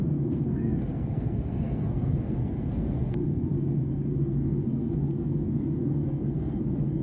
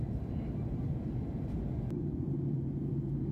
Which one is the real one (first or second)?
second